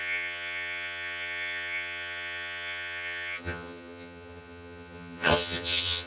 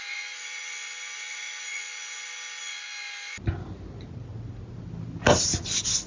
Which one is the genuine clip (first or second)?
second